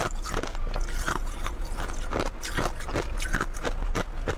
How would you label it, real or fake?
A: real